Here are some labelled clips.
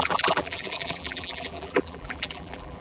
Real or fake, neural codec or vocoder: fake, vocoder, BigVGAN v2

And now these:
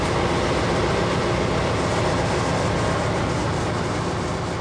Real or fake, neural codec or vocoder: real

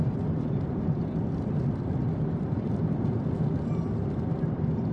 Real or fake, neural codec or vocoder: real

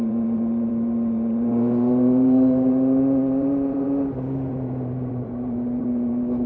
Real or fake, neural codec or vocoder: fake, vocoder, BigVGAN v2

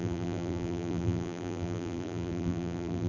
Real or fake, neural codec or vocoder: fake, vocoder, BigVGAN v2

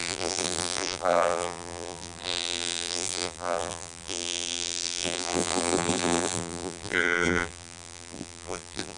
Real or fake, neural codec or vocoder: fake, vocoder, BigVGAN v2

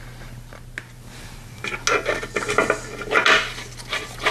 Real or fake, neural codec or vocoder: real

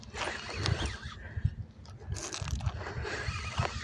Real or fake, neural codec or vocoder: real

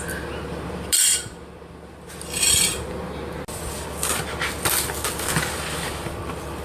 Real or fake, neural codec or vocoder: real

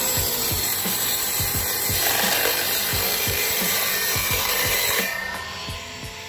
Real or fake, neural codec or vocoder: fake, vocoder, BigVGAN v2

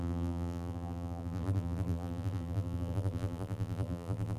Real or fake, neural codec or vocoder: fake, vocoder, BigVGAN v2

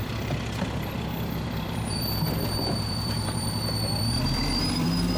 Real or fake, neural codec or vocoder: fake, vocoder, BigVGAN v2